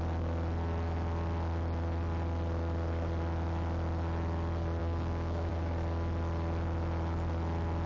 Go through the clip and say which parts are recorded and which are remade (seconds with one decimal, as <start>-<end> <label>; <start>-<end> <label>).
0.0-4.8 recorded; 4.8-5.5 remade; 5.5-7.9 recorded